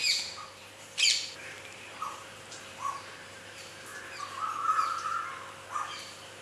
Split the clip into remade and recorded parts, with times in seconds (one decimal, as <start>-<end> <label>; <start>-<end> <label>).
0.0-3.9 remade; 3.9-6.0 recorded; 6.0-6.4 remade